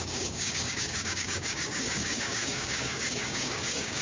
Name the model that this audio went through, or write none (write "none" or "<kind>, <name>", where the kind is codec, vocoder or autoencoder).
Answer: codec, DAC